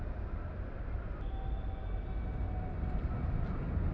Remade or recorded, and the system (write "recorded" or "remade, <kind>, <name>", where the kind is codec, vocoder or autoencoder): recorded